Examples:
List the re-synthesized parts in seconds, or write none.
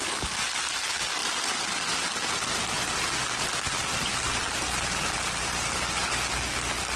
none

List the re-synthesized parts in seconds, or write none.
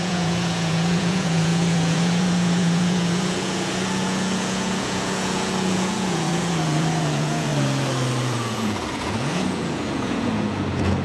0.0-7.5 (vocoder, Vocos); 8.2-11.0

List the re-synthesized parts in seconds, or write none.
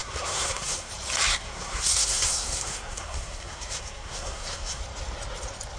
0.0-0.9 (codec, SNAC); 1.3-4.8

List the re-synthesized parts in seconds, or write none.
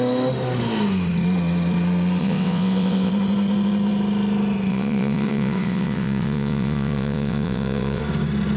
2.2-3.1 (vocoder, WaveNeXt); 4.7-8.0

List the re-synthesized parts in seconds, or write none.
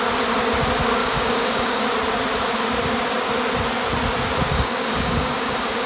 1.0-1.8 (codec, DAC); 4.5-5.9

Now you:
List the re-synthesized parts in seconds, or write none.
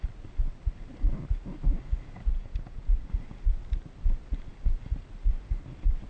2.3-3.1 (vocoder, Vocos)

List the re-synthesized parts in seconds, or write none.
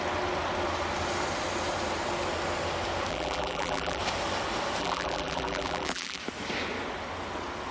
3.1-4.0 (vocoder, BigVGAN v2); 4.8-6.2